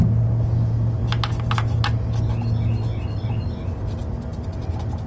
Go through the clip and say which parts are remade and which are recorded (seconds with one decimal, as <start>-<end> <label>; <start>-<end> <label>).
0.0-5.1 recorded